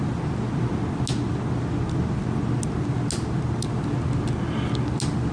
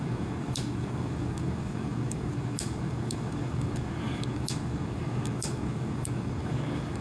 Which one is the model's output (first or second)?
second